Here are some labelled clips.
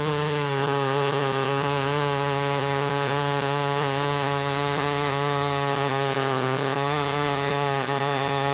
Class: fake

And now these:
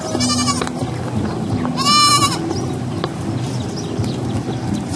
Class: real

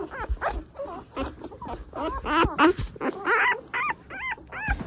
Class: real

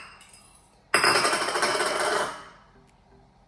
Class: real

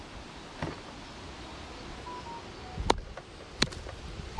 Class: real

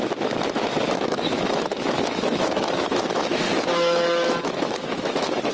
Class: fake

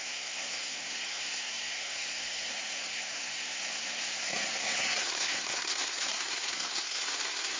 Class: fake